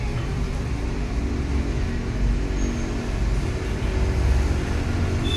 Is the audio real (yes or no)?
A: yes